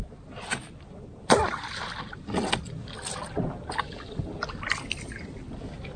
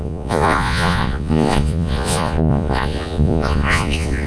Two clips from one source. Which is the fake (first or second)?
second